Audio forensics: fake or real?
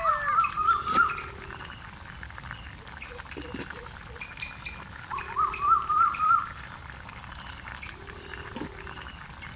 real